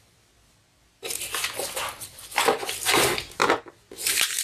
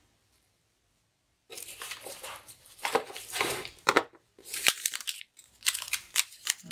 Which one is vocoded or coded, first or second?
second